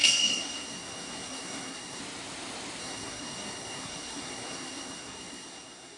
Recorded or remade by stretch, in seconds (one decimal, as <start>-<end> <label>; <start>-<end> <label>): 0.0-2.0 remade; 2.0-2.8 recorded; 2.8-6.0 remade